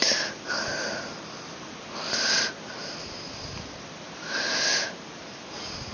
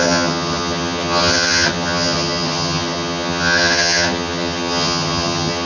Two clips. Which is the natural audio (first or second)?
first